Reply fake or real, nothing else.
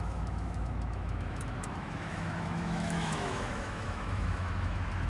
fake